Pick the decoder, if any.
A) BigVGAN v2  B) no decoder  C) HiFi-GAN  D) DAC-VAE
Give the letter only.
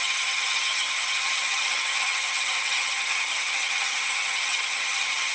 C